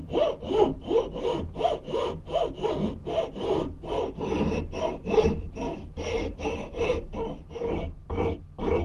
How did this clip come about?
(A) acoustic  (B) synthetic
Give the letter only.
A